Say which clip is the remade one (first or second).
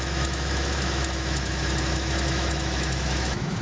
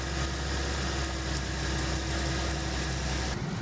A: first